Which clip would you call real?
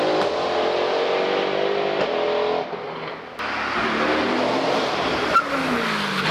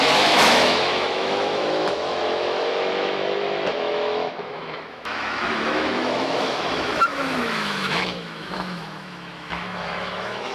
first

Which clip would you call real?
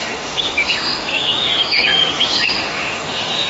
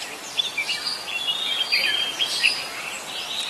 second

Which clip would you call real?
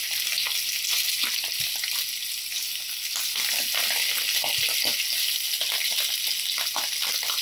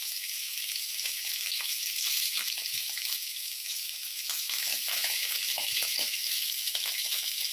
first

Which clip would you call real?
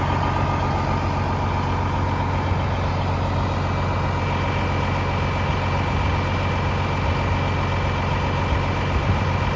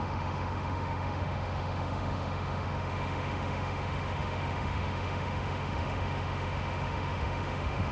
first